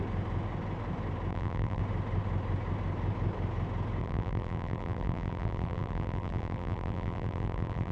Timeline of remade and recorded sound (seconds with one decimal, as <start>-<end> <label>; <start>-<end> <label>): 0.0-1.3 recorded; 1.3-1.8 remade; 1.8-4.0 recorded; 4.0-7.9 remade